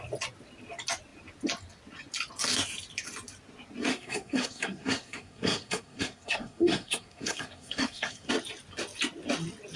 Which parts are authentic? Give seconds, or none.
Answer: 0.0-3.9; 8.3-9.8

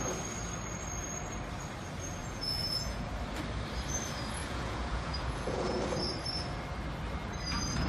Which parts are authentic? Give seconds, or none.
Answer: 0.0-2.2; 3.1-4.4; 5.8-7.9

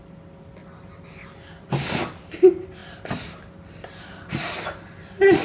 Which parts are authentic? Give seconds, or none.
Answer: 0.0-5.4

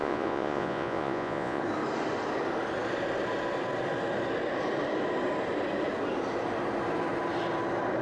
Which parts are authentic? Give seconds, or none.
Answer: 1.6-8.0